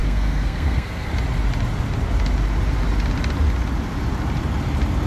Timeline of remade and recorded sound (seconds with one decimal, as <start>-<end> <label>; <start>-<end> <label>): 0.0-1.1 remade; 1.1-5.1 recorded